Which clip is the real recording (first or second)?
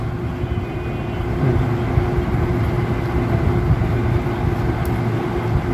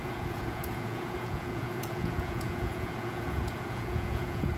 first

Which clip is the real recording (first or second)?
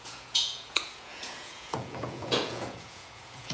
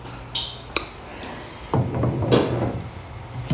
second